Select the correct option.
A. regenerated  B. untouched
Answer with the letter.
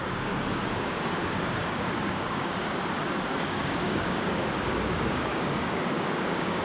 A